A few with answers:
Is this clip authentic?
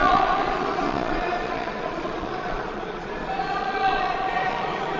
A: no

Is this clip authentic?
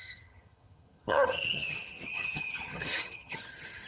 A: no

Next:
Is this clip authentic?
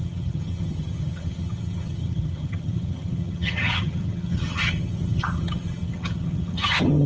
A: no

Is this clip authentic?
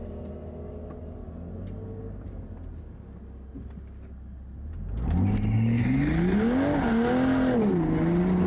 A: yes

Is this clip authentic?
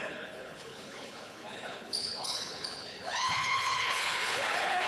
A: no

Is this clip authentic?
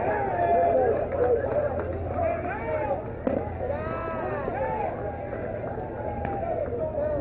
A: yes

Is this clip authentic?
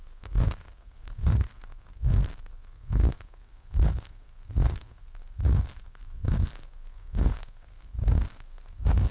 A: no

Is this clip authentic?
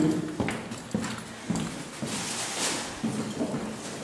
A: yes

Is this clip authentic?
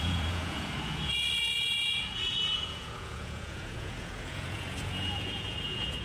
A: no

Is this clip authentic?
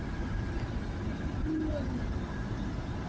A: yes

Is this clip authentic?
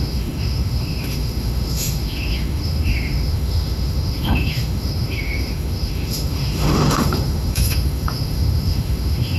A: no